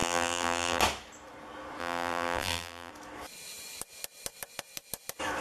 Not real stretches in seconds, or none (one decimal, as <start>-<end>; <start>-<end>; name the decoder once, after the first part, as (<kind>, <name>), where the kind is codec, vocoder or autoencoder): 0.0-0.8 (vocoder, BigVGAN v2); 1.8-2.9